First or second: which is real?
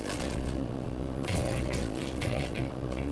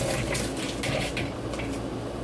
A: second